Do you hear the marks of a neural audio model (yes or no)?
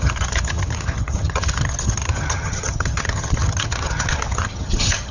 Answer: yes